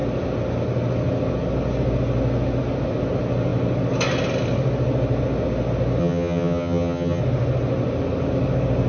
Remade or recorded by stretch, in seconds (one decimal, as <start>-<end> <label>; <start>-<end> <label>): 0.0-6.0 recorded; 6.0-7.2 remade; 7.2-8.9 recorded